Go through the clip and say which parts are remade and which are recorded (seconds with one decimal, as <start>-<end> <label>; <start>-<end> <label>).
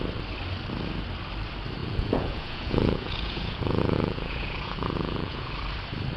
0.0-1.8 recorded; 1.8-5.5 remade; 5.5-6.2 recorded